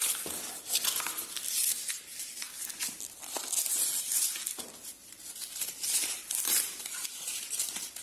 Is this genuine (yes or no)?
yes